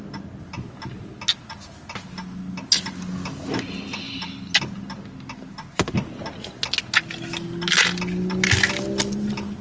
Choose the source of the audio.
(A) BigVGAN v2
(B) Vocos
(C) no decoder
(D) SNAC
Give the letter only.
C